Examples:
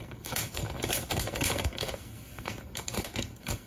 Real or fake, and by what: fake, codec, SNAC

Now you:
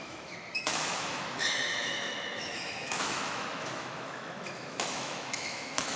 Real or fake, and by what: fake, autoencoder, DAC-VAE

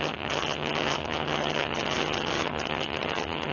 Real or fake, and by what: fake, vocoder, HiFi-GAN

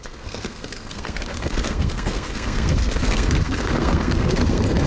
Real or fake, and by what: fake, codec, SNAC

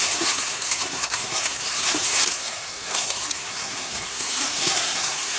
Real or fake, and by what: fake, codec, SNAC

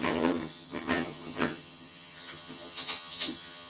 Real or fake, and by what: fake, vocoder, HiFi-GAN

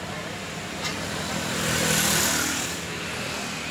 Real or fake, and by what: real